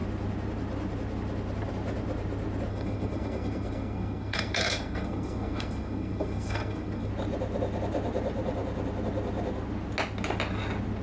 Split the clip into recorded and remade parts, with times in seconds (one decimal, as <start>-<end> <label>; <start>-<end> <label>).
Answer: 0.0-2.7 recorded; 2.7-7.1 remade; 7.1-11.0 recorded